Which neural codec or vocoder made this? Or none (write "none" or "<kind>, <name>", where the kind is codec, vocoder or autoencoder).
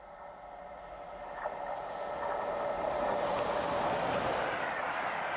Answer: none